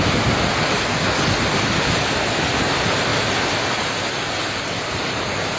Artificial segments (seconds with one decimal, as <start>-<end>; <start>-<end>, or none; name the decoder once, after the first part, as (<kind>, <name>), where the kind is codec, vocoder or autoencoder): none